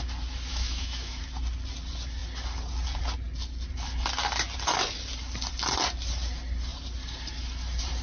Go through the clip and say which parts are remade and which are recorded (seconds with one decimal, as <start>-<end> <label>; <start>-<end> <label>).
0.0-0.5 recorded; 0.5-1.2 remade; 1.2-8.0 recorded